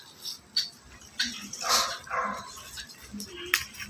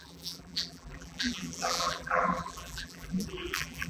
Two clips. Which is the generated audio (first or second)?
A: second